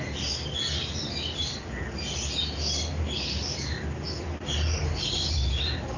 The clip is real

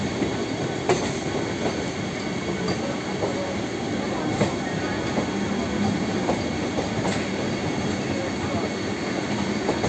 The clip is real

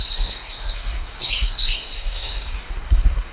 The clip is fake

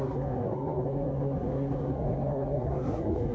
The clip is fake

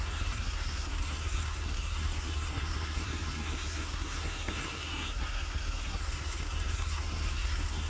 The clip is fake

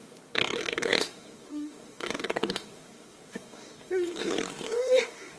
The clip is fake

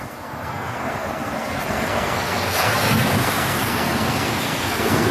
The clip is fake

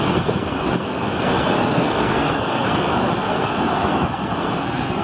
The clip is fake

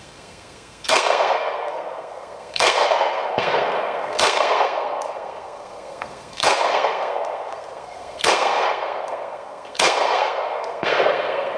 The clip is fake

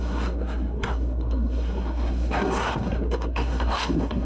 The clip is fake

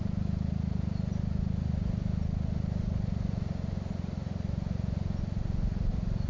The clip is real